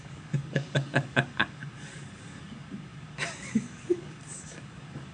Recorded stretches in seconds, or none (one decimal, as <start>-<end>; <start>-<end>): none